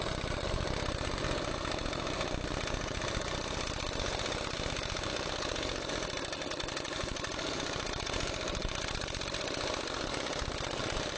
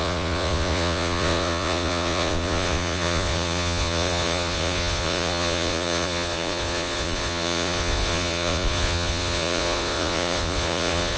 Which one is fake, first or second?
second